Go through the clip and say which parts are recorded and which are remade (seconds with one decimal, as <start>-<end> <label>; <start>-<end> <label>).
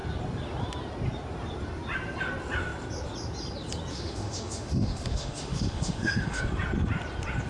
0.0-3.9 recorded; 3.9-6.4 remade; 6.4-7.5 recorded